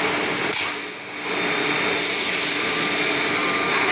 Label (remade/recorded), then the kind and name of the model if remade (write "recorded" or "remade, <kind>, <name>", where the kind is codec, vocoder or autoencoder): recorded